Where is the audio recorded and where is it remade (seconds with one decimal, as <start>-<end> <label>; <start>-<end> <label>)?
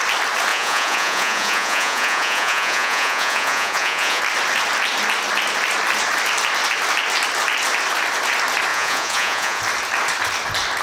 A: 0.0-0.5 recorded; 0.5-4.2 remade; 4.2-8.7 recorded; 8.7-9.6 remade; 9.6-10.8 recorded